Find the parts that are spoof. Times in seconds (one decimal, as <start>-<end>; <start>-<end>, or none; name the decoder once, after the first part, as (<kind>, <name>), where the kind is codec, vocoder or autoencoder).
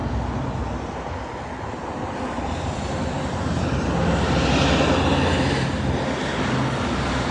none